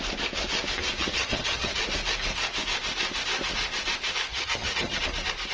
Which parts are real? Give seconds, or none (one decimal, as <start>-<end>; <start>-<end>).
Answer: 0.0-1.0; 1.8-4.3; 5.0-5.5